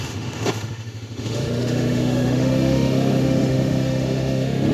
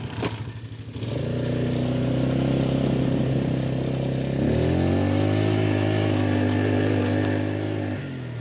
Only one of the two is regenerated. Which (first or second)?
first